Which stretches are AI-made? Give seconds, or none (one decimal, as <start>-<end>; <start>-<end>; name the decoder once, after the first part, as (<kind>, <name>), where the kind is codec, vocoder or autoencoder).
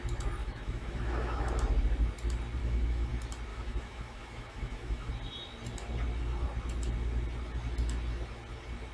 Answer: 0.4-1.5 (autoencoder, DAC-VAE); 2.6-3.1; 3.5-5.1